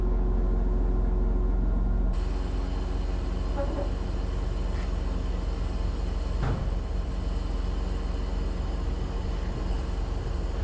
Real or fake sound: real